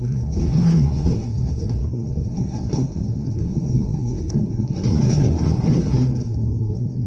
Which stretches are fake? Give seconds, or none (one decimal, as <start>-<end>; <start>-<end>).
0.0-7.1